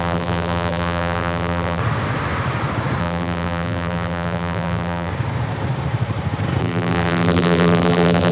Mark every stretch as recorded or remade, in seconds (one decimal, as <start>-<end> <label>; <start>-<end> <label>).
0.0-1.8 remade; 1.8-3.0 recorded; 3.0-5.1 remade; 5.1-6.6 recorded; 6.6-8.3 remade

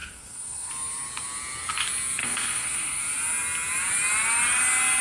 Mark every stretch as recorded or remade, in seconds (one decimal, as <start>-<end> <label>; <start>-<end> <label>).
0.0-0.7 remade; 0.7-2.2 recorded; 2.2-3.0 remade; 3.0-5.0 recorded

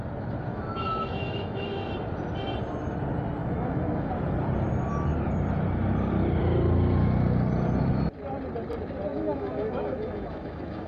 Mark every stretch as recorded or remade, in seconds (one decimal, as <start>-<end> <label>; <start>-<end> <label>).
0.0-0.5 recorded; 0.5-1.9 remade; 1.9-3.4 recorded; 3.4-4.1 remade; 4.1-9.1 recorded; 9.1-10.9 remade

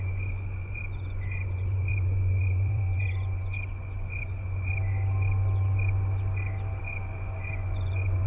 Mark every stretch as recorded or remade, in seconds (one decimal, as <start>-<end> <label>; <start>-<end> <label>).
0.0-4.7 remade; 4.7-6.8 recorded; 6.8-8.3 remade

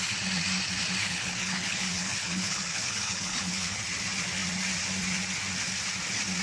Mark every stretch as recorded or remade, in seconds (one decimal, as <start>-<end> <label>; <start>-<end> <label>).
0.0-1.0 recorded; 1.0-3.8 remade; 3.8-6.4 recorded

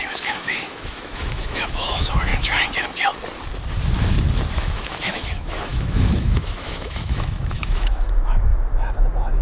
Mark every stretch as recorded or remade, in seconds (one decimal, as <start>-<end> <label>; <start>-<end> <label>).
0.0-2.3 remade; 2.3-4.5 recorded; 4.5-8.5 remade; 8.5-9.4 recorded

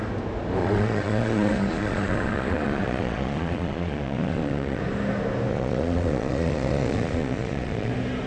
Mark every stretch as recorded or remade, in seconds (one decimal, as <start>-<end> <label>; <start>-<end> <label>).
0.0-0.6 recorded; 0.6-4.8 remade; 4.8-5.5 recorded; 5.5-7.9 remade; 7.9-8.3 recorded